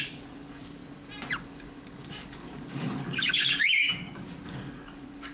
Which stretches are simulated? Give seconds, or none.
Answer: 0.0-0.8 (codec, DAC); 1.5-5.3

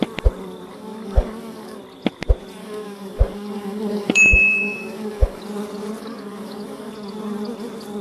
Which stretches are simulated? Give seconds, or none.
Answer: 0.7-1.8 (codec, DAC); 2.6-5.4; 6.0-6.9

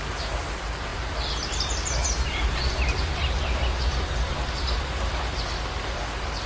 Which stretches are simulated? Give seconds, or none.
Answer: none

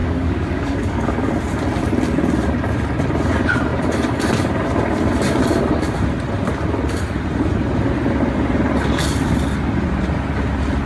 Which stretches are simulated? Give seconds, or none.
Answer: 0.0-1.3 (codec, DAC)

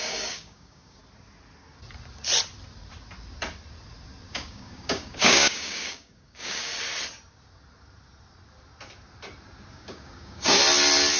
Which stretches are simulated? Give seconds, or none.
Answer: 0.0-1.0 (codec, DAC); 4.3-6.7; 9.7-10.6

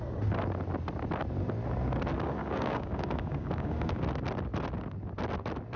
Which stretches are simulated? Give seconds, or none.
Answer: 2.4-4.0 (codec, DAC)

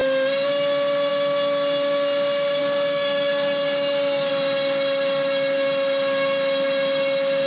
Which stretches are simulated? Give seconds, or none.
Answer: 2.6-4.3 (codec, DAC)